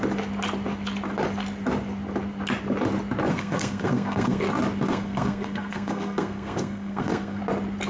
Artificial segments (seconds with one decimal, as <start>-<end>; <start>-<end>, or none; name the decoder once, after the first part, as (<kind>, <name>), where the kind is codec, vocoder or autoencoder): 3.3-4.4 (codec, SNAC); 4.9-7.4